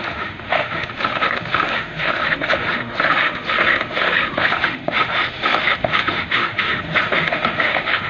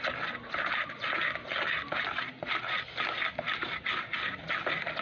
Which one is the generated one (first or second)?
first